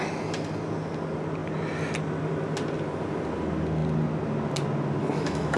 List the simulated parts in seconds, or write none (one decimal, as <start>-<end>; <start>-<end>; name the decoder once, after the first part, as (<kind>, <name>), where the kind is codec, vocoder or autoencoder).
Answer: 5.0-5.6 (autoencoder, DAC-VAE)